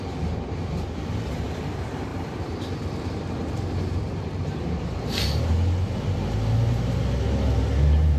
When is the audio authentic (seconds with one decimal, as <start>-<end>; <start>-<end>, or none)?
0.0-2.1; 5.2-8.2